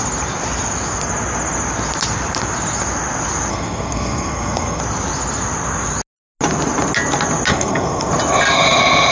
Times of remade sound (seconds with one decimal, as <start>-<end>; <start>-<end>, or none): 3.5-4.8; 7.5-8.1